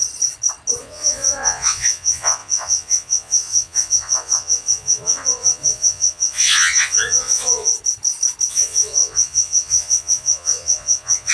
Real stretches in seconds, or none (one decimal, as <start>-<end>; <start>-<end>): 0.0-0.8; 7.7-8.5

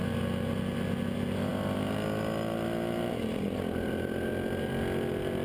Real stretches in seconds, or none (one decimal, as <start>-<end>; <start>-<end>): 0.0-5.4